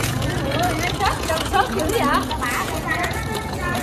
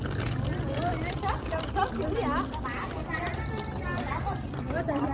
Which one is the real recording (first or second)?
second